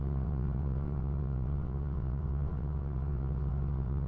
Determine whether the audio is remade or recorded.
remade